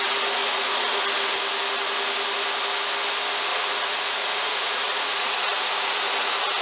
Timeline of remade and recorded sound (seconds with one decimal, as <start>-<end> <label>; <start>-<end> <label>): 0.0-0.4 recorded; 0.4-1.0 remade; 1.0-3.5 recorded; 3.5-6.0 remade; 6.0-6.6 recorded